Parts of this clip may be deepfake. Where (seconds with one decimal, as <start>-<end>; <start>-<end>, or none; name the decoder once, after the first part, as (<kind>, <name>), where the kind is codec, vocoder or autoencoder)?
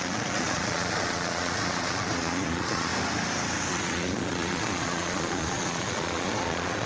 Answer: 0.0-2.9 (vocoder, Vocos); 3.7-6.9